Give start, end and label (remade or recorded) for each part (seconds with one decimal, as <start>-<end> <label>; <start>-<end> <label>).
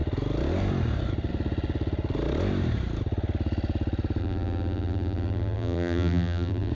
0.0-4.2 recorded; 4.2-6.7 remade